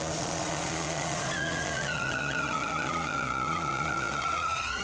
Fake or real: fake